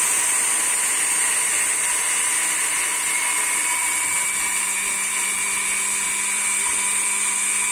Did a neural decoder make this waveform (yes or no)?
no